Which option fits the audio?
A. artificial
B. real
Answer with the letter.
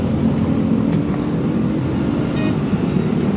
B